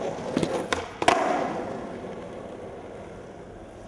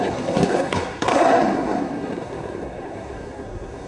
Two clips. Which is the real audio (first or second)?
first